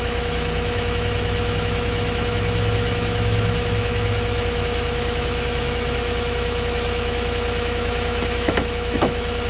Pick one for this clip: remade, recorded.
remade